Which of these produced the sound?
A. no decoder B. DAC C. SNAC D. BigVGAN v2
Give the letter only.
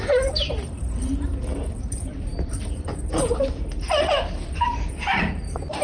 D